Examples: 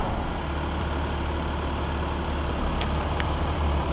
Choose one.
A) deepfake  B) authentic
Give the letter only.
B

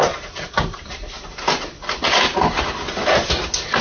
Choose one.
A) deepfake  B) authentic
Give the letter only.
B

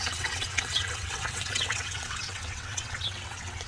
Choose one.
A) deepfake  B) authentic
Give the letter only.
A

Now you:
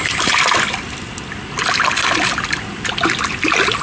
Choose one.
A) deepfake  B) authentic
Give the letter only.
B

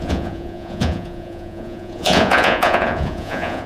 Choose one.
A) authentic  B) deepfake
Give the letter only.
B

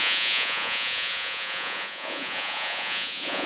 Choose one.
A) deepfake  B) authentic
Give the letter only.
A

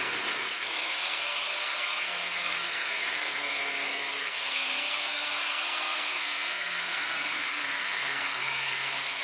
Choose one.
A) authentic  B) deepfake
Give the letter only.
B